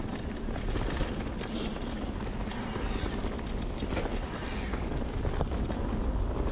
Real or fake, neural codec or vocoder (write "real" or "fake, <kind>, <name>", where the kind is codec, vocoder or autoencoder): real